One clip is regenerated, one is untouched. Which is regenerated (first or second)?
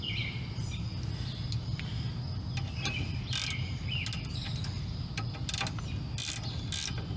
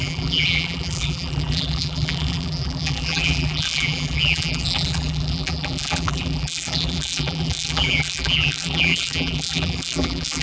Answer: second